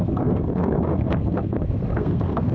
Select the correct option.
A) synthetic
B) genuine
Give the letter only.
A